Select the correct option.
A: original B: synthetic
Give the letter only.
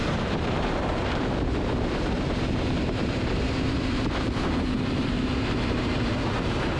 B